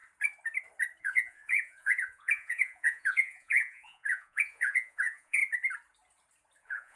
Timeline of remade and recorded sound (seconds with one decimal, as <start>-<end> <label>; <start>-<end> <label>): 0.0-1.0 recorded; 1.0-5.4 remade; 5.4-6.6 recorded; 6.6-7.0 remade